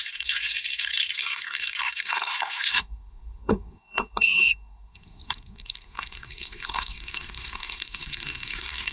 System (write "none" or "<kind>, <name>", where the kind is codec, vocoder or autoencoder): codec, SNAC